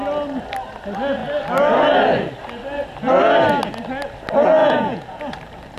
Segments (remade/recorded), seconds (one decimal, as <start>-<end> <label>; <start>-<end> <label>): 0.0-4.6 recorded; 4.6-5.2 remade; 5.2-5.8 recorded